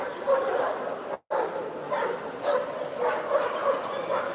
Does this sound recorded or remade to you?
recorded